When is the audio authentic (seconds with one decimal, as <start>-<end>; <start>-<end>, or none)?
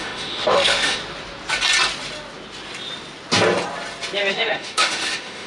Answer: 1.0-4.3